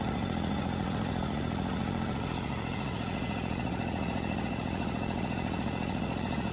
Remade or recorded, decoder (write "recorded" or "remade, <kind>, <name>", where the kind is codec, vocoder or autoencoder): remade, vocoder, Vocos